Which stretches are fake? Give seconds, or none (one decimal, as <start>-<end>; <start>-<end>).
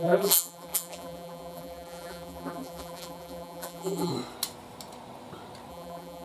0.0-4.1; 5.7-6.2